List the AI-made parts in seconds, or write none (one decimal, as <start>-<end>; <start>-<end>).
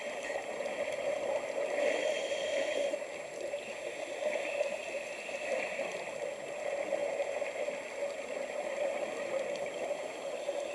none